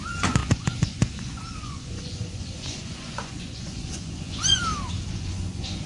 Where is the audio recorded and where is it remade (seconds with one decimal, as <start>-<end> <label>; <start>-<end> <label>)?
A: 0.0-4.6 remade; 4.6-5.1 recorded; 5.1-5.9 remade